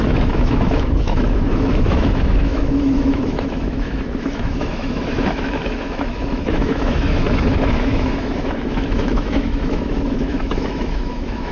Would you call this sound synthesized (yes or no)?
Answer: yes